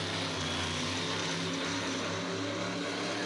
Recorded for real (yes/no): yes